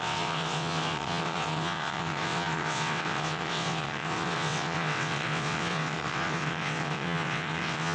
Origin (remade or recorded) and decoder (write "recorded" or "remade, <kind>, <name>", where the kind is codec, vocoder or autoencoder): remade, vocoder, WaveNeXt